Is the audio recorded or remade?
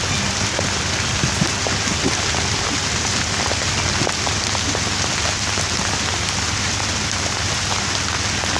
recorded